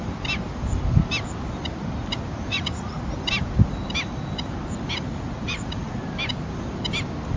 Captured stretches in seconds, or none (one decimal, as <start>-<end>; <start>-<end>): 0.0-2.5; 3.0-5.1; 6.0-7.4